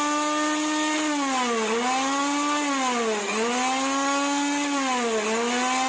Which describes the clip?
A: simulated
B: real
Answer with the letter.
B